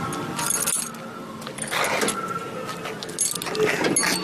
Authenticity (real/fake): real